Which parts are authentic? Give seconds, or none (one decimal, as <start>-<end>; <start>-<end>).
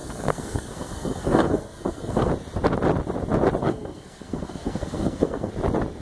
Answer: 2.3-3.6; 5.5-6.0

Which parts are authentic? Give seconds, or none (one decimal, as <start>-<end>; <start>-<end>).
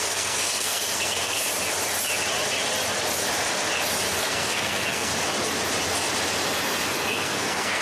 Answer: 1.5-4.2; 5.1-7.1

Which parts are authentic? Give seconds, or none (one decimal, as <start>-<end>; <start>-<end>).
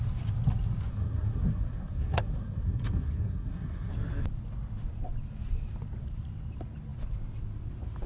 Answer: 0.0-0.9; 3.9-8.1